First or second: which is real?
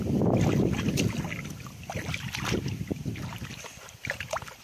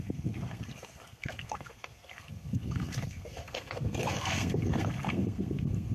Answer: first